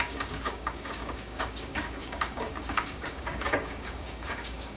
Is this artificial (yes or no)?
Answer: yes